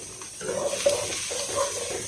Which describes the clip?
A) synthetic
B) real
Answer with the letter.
B